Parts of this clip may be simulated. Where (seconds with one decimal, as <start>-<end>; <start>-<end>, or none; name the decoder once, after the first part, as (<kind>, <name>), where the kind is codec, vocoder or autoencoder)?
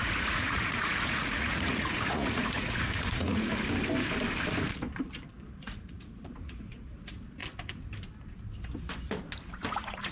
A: 0.0-3.5 (vocoder, Vocos); 5.6-7.4; 9.5-10.1